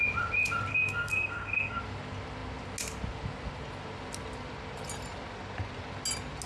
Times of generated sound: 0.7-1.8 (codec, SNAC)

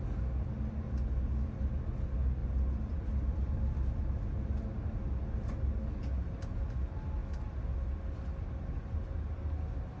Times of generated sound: 2.4-3.5 (vocoder, BigVGAN v2)

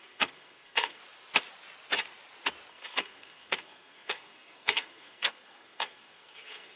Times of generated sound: 0.0-1.0 (codec, SNAC); 2.7-6.8

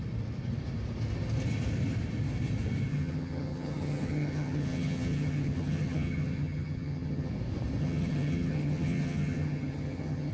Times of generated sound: 2.9-7.3 (vocoder, HiFi-GAN); 7.8-10.3

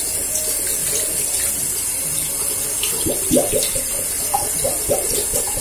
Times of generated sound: none